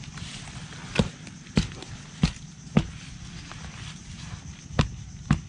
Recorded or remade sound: recorded